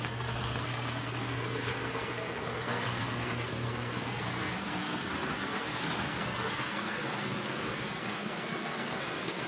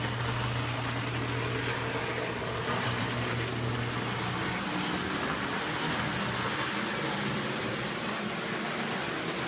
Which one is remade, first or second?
first